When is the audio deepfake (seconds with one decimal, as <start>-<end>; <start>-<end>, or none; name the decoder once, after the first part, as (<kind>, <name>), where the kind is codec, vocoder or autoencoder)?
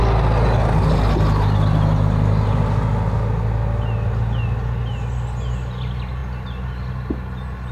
none